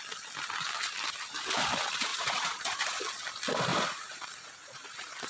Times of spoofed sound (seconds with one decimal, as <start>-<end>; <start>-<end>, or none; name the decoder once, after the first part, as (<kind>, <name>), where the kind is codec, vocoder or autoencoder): 2.1-3.0 (vocoder, Vocos); 3.7-5.3